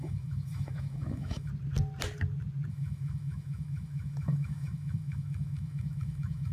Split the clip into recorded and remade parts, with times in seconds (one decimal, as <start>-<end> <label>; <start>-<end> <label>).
0.0-1.5 remade; 1.5-2.7 recorded; 2.7-6.5 remade